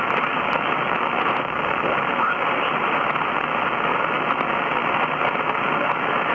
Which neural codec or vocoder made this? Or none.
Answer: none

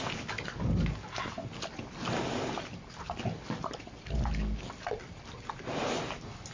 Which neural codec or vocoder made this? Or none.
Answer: none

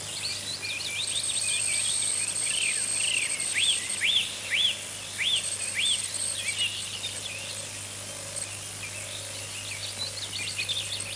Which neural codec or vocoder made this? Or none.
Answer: none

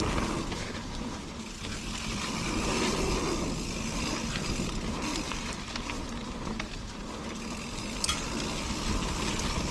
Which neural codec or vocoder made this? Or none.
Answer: none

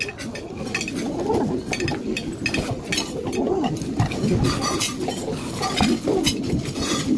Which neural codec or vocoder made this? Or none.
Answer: none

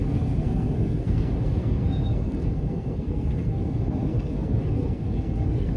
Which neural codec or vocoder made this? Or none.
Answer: codec, SNAC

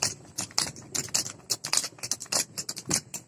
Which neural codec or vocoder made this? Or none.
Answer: none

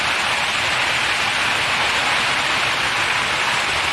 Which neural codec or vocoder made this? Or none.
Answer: none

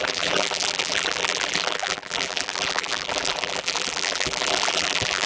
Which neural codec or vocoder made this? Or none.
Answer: vocoder, BigVGAN v2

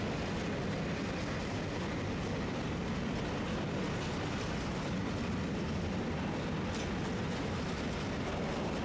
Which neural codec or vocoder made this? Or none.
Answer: none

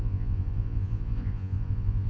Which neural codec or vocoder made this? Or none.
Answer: vocoder, Vocos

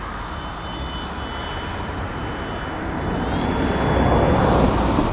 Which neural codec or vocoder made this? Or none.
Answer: none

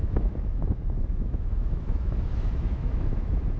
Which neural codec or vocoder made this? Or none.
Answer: autoencoder, DAC-VAE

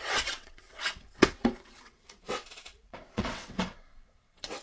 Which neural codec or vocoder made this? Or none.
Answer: vocoder, WaveNeXt